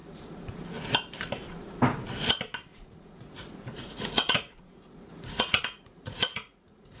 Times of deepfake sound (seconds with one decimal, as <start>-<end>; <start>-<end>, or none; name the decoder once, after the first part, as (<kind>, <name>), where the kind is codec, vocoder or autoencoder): 0.0-0.9 (vocoder, Vocos); 2.7-7.0